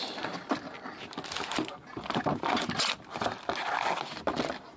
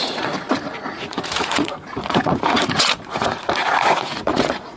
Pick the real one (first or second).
first